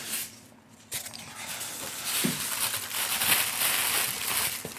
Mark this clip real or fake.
real